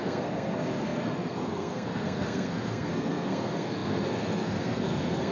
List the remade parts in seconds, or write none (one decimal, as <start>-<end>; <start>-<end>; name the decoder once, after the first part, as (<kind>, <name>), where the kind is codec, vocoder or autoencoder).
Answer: 0.0-5.3 (codec, SNAC)

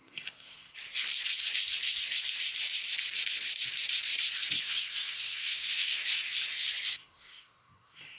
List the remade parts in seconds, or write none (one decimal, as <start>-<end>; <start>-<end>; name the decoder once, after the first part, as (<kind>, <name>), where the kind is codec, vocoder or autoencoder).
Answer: 0.0-0.7 (codec, SNAC); 4.6-6.0; 6.9-8.2

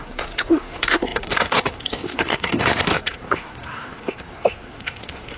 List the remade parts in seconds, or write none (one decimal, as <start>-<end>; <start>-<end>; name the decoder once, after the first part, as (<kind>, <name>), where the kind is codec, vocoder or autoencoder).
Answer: 0.0-5.4 (codec, SNAC)

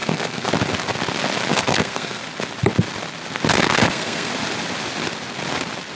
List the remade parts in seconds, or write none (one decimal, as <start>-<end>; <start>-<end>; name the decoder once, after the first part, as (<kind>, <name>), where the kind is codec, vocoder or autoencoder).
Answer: 0.0-0.5 (codec, SNAC); 1.5-2.2; 3.5-4.3